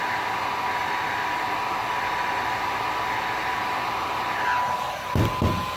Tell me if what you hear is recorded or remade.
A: recorded